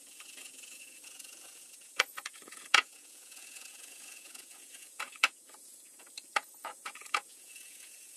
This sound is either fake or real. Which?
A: fake